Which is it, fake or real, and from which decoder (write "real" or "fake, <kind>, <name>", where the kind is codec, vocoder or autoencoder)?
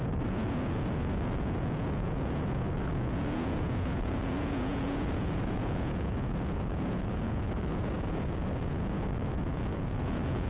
fake, vocoder, Vocos